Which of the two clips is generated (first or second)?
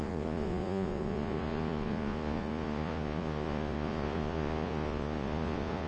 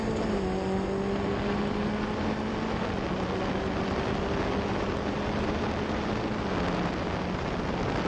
first